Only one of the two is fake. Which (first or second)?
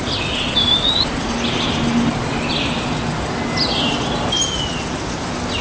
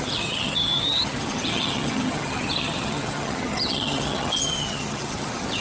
second